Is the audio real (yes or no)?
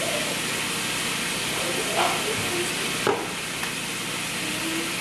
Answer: yes